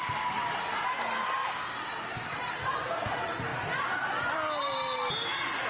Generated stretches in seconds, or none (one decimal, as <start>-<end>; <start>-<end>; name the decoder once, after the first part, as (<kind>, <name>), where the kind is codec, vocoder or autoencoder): 1.4-2.9 (vocoder, BigVGAN v2)